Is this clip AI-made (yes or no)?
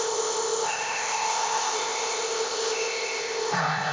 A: yes